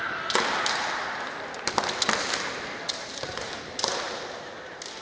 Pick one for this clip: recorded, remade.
recorded